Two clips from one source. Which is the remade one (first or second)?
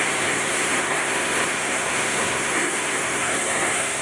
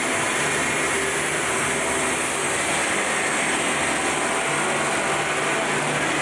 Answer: first